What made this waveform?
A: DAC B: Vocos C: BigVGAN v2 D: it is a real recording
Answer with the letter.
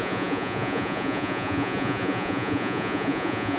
B